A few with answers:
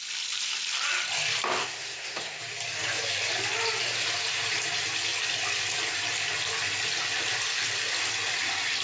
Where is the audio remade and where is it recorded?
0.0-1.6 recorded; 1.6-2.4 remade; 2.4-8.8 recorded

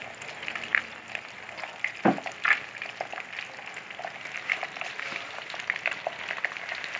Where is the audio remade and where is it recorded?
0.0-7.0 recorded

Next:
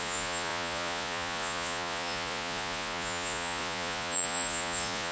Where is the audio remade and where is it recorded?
0.0-5.1 remade